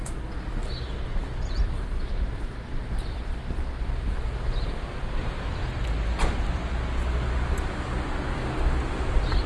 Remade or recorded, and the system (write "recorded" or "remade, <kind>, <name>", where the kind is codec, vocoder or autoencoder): recorded